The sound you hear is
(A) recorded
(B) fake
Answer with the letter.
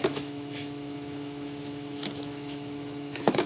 B